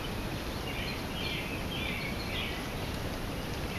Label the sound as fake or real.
real